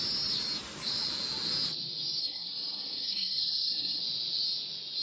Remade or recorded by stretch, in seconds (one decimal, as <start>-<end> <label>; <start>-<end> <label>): 0.0-2.2 recorded; 2.2-4.0 remade; 4.0-5.0 recorded